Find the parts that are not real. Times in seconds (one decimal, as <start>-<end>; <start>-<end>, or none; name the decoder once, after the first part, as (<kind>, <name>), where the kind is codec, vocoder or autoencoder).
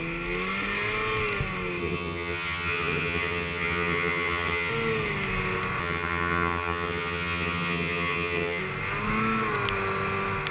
1.8-4.7 (vocoder, HiFi-GAN); 5.8-8.6